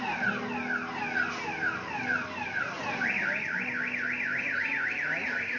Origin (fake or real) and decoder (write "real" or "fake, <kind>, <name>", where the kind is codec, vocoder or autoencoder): real